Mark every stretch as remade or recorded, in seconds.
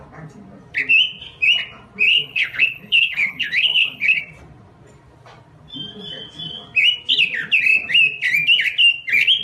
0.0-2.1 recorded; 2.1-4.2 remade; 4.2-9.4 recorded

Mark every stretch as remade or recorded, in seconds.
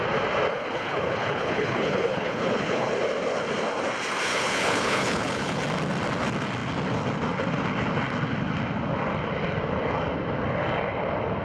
0.0-0.5 recorded; 0.5-2.9 remade; 2.9-4.3 recorded; 4.3-5.6 remade; 5.6-11.4 recorded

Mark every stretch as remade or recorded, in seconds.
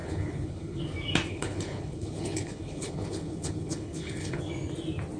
0.0-0.8 remade; 0.8-1.3 recorded; 1.3-4.4 remade; 4.4-5.2 recorded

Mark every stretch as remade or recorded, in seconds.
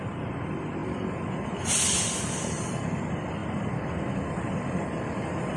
0.0-5.6 recorded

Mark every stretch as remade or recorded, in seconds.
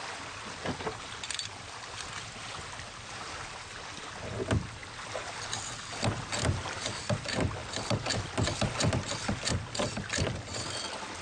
0.0-11.2 recorded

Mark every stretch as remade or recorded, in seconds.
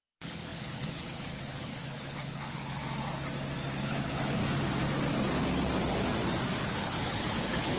0.0-2.8 remade; 2.8-3.8 recorded; 3.8-4.4 remade; 4.4-6.6 recorded; 6.6-7.8 remade